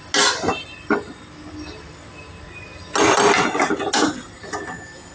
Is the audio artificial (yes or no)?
no